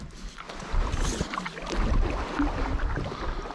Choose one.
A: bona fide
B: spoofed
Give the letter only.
A